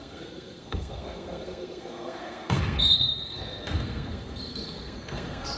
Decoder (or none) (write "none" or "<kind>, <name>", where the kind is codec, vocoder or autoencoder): codec, SNAC